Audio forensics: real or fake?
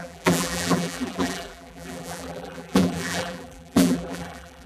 fake